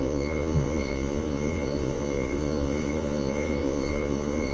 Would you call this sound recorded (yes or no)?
no